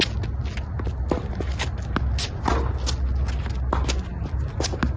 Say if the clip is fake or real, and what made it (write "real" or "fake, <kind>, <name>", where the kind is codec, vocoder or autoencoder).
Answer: real